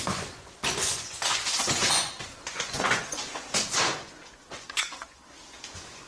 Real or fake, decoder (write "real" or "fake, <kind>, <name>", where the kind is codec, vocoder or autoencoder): fake, vocoder, Vocos